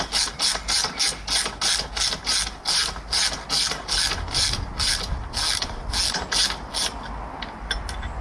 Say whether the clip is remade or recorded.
recorded